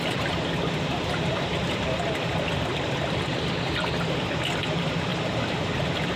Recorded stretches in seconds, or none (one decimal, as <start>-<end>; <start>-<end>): 0.0-6.2